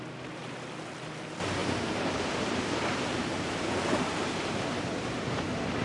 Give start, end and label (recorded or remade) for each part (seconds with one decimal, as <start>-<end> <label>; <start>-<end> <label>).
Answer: 0.0-1.6 recorded; 1.6-5.1 remade; 5.1-5.8 recorded